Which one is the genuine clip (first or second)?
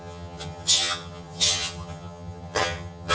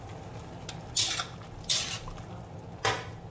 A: second